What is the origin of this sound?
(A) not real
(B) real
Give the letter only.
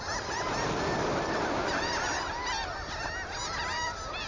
B